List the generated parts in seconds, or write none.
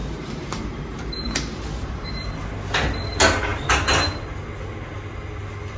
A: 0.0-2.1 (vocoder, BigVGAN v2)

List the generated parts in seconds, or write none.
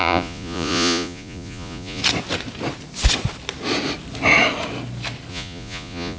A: 0.0-2.0 (vocoder, Vocos); 5.3-6.2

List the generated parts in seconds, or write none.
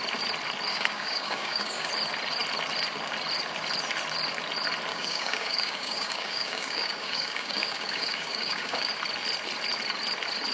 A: 0.7-1.9 (codec, DAC); 4.9-8.9